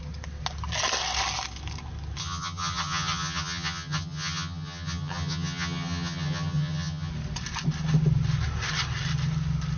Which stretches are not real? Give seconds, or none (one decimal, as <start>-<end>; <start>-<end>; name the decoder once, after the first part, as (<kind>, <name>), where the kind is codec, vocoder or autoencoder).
2.2-7.1 (vocoder, HiFi-GAN)